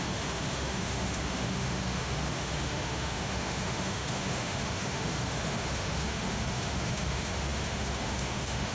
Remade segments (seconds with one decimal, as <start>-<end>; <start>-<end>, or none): 0.0-8.7